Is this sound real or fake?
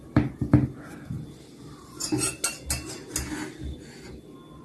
real